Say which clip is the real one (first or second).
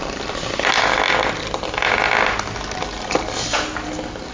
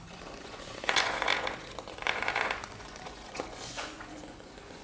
first